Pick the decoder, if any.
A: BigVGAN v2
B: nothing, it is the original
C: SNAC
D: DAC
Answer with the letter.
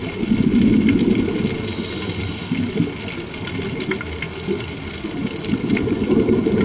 B